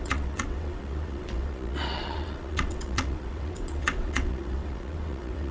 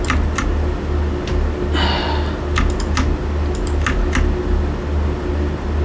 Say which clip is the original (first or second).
second